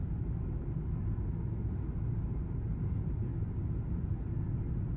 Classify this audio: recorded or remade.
recorded